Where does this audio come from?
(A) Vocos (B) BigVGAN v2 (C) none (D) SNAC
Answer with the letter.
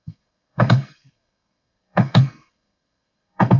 D